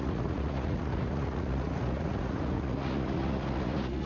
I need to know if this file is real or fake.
fake